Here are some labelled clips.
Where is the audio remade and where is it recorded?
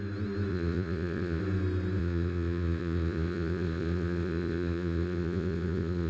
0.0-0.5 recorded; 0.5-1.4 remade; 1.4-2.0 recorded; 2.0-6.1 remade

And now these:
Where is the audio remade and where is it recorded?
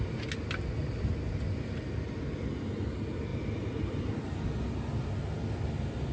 0.0-6.1 recorded